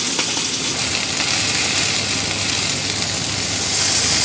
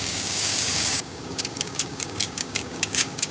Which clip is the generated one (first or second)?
second